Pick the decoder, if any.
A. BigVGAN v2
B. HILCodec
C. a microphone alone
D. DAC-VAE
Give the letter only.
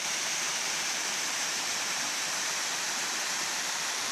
A